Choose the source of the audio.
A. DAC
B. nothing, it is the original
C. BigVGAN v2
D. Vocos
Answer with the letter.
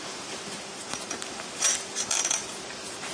C